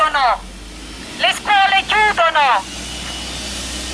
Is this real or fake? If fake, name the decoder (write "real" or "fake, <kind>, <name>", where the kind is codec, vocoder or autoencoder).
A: real